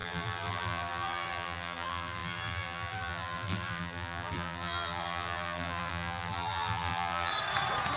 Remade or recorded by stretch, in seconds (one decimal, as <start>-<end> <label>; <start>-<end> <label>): 0.0-7.3 remade; 7.3-8.0 recorded